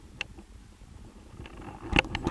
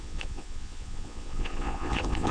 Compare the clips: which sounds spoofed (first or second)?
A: second